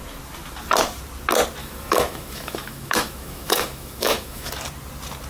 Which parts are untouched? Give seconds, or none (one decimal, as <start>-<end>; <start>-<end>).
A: 0.0-1.6; 4.5-5.3